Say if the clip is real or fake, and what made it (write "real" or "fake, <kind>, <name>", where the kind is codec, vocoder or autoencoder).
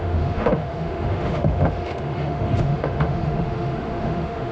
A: fake, autoencoder, DAC-VAE